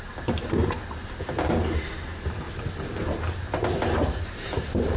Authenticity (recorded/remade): remade